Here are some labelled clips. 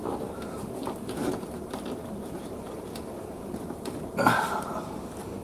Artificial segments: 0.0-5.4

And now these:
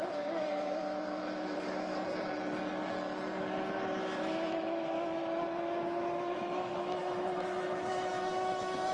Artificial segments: 0.0-1.9; 4.0-5.2; 6.3-8.9

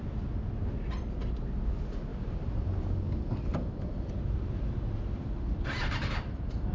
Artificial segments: 2.1-2.7; 3.5-6.7

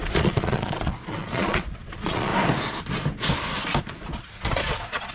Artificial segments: 0.0-2.3; 3.8-5.1

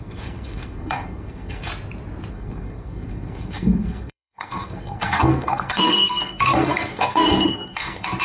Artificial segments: 0.0-1.7; 2.3-8.2

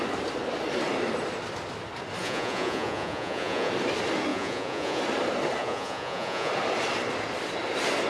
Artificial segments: 2.2-3.7; 4.3-5.0; 5.6-6.5